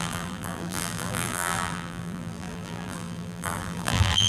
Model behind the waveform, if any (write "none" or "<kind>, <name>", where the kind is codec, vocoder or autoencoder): vocoder, BigVGAN v2